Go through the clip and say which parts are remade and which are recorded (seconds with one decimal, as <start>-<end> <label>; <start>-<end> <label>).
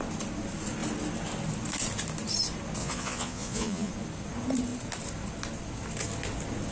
0.0-2.8 recorded; 2.8-3.9 remade; 3.9-6.7 recorded